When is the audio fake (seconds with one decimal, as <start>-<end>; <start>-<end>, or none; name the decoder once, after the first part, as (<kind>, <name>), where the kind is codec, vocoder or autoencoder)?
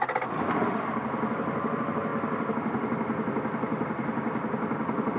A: none